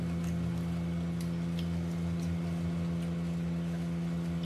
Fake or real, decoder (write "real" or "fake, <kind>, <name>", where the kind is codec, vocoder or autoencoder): real